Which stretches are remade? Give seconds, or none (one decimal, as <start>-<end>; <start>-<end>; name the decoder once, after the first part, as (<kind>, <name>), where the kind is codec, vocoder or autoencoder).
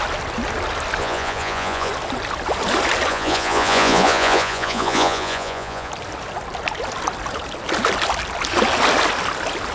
1.0-1.9 (vocoder, Vocos); 3.1-5.9